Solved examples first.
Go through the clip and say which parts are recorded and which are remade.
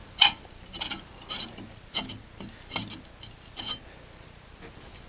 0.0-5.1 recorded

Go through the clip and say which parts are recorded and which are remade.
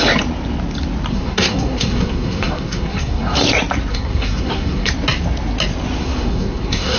0.0-1.1 recorded; 1.1-3.4 remade; 3.4-3.9 recorded; 3.9-4.9 remade; 4.9-6.0 recorded; 6.0-7.0 remade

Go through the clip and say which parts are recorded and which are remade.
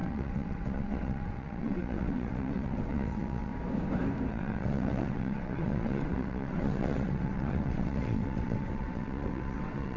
0.0-3.5 remade; 3.5-4.3 recorded; 4.3-10.0 remade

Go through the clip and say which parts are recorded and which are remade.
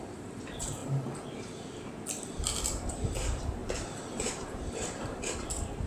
0.0-0.8 remade; 0.8-2.9 recorded; 2.9-3.6 remade; 3.6-4.2 recorded; 4.2-5.9 remade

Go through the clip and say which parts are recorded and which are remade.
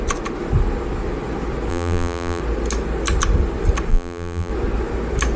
0.0-1.7 recorded; 1.7-2.4 remade; 2.4-3.9 recorded; 3.9-4.5 remade; 4.5-5.4 recorded